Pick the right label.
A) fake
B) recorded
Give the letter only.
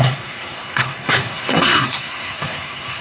A